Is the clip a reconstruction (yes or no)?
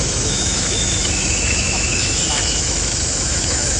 yes